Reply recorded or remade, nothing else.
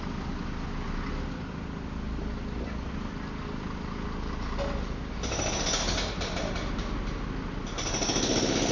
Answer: recorded